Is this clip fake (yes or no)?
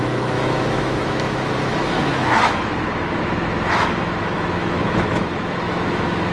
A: yes